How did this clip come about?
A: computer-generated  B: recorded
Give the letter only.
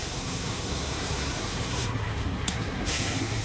A